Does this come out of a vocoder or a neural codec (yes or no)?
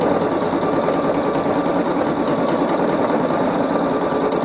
no